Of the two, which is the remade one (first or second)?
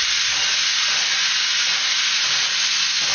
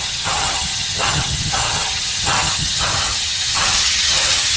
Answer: second